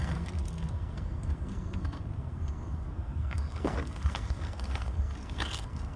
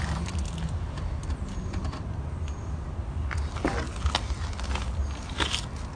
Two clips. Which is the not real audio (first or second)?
first